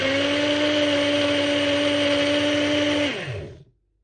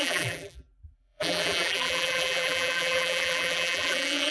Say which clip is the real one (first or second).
first